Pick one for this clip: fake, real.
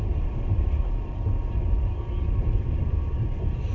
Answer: fake